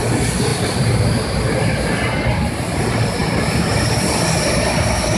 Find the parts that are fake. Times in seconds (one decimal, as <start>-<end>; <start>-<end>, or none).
none